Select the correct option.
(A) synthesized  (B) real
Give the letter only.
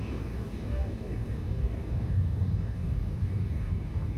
A